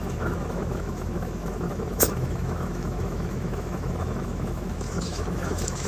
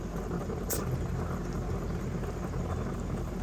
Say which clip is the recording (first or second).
second